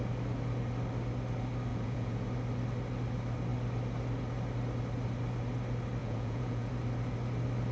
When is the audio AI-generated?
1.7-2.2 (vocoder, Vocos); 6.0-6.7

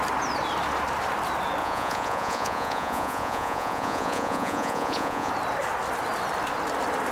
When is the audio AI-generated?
1.6-5.3 (vocoder, Vocos)